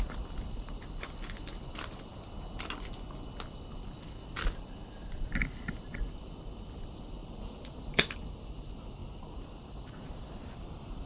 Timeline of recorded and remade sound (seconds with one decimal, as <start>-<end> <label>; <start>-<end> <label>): 0.0-2.1 remade; 2.1-5.7 recorded; 5.7-7.2 remade; 7.2-7.7 recorded; 7.7-11.1 remade